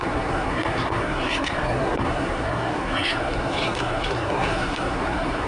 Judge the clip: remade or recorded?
remade